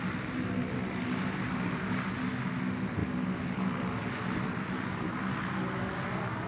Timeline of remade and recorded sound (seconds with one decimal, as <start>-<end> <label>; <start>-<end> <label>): 0.0-6.5 recorded